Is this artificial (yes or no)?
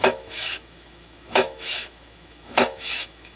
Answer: yes